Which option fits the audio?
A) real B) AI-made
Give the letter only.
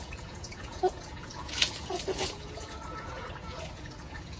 B